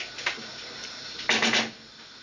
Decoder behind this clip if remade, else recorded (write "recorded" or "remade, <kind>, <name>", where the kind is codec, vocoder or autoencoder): recorded